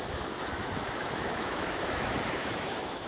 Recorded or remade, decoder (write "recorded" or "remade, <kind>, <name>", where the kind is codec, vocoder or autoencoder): remade, autoencoder, DAC-VAE